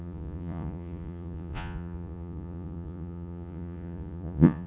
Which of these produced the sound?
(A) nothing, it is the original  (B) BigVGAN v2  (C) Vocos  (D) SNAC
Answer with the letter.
C